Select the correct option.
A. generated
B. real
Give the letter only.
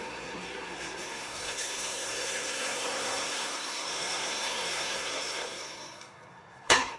A